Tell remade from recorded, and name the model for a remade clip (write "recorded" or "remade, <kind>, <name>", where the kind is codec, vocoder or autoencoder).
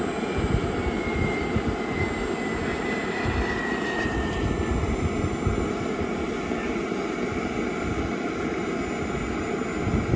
recorded